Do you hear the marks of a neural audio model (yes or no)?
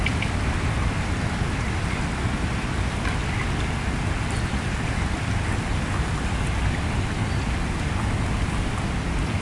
no